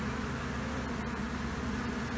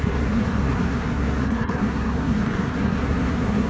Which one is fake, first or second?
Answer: second